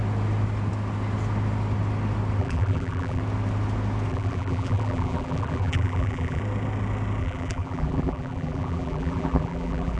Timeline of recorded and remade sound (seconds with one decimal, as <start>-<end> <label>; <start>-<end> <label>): 0.0-2.4 recorded; 2.4-3.2 remade; 3.2-4.1 recorded; 4.1-6.4 remade; 6.4-7.2 recorded; 7.2-10.0 remade